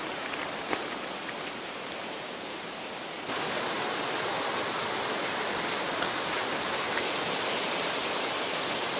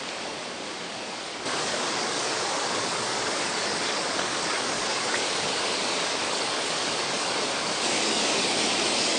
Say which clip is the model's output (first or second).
second